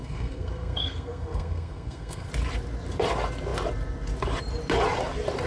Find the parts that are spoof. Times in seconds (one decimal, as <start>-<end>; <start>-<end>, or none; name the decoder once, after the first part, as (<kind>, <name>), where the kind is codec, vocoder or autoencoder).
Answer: 0.0-2.3 (codec, SNAC)